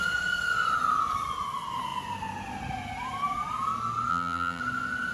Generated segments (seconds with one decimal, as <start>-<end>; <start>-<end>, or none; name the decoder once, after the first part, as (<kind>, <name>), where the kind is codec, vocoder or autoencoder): 4.1-4.6 (vocoder, BigVGAN v2)